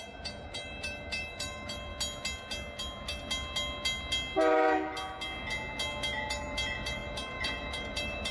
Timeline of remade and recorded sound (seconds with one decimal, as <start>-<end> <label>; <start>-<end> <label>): 0.0-1.9 remade; 1.9-6.3 recorded; 6.3-8.3 remade